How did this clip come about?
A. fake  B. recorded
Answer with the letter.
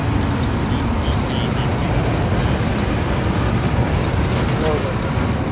B